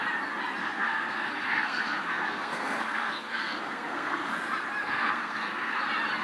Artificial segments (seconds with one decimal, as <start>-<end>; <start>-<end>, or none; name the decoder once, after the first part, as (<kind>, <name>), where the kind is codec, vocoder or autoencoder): 0.6-4.3 (codec, SNAC); 4.8-5.8